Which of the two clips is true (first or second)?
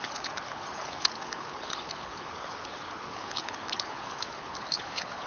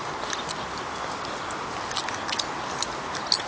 second